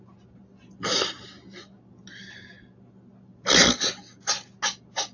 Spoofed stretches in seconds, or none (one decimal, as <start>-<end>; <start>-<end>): none